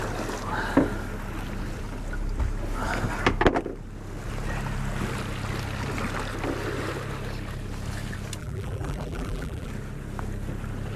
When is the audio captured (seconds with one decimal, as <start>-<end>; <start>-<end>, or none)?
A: 0.0-8.4; 9.7-11.0